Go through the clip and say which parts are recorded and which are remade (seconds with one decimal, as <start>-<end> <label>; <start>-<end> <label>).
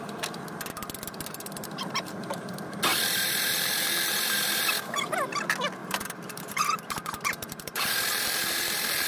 0.0-2.9 recorded; 2.9-4.7 remade; 4.7-5.8 recorded; 5.8-9.1 remade